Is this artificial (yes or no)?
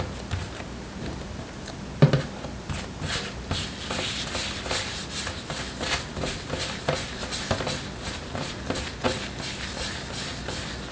no